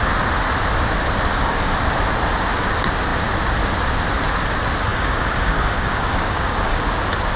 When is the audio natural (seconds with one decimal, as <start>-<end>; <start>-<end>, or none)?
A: 0.0-1.3; 1.8-4.9; 6.8-7.4